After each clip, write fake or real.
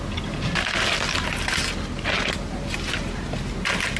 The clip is real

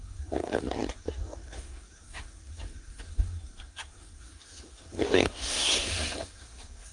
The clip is fake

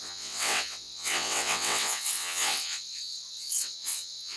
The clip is fake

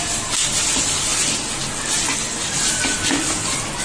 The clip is real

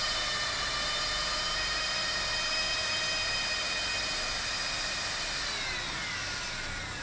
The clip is real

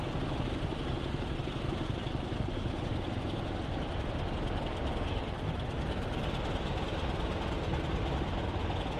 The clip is real